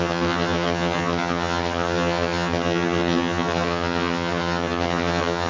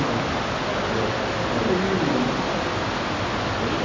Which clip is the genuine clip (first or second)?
second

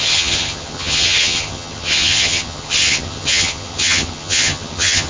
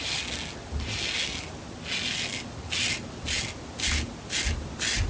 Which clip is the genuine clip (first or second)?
second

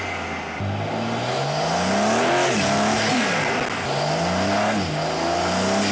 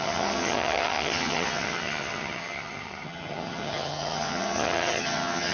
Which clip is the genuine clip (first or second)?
first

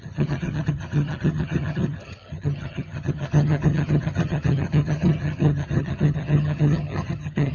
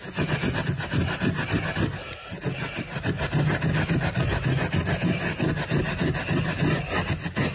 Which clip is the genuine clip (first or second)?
second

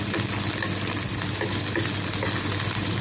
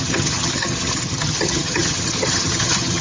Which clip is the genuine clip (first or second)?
first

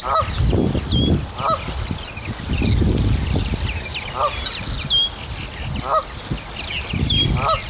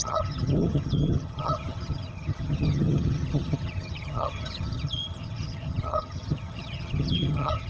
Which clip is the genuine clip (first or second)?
first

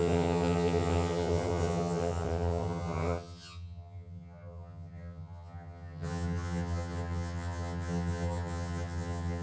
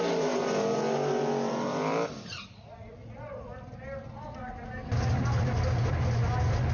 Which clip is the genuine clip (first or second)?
second